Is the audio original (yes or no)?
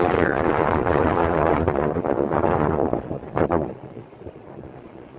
no